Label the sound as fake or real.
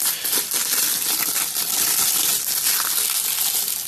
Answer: real